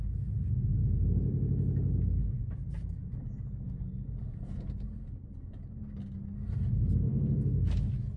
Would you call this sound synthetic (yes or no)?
no